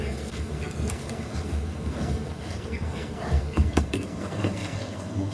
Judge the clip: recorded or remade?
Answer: remade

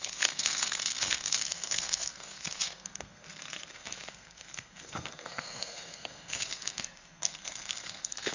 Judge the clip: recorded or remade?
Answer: remade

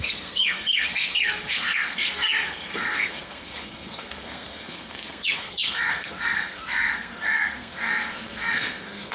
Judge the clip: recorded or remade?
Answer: remade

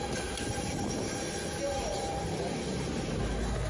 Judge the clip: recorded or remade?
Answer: recorded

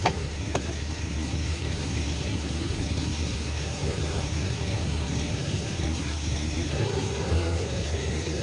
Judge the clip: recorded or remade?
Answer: remade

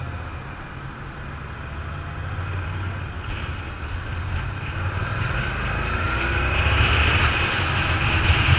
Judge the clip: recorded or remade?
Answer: recorded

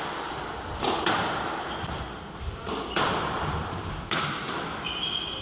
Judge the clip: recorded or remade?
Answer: recorded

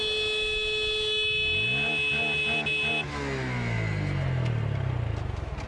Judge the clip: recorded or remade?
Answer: recorded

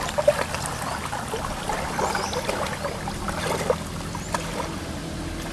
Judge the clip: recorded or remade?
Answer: recorded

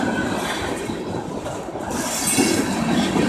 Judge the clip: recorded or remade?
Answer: recorded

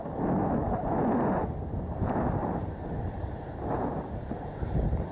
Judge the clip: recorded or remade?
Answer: recorded